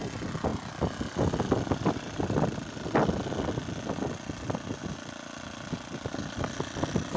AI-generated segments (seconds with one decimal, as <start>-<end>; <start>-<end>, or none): none